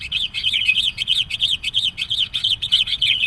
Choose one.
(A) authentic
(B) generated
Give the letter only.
B